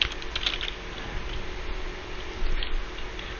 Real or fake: real